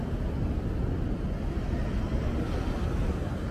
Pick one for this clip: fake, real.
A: real